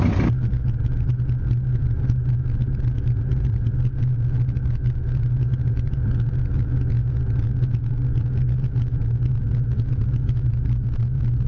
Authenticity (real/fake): real